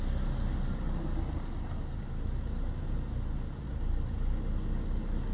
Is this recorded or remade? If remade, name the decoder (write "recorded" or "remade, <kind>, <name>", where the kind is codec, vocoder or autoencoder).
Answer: recorded